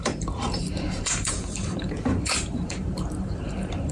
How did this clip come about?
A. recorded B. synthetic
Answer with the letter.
B